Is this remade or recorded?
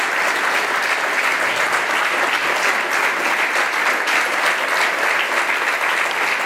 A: recorded